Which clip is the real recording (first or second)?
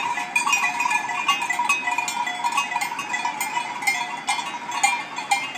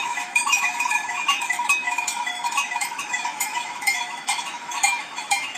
first